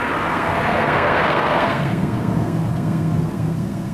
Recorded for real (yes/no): no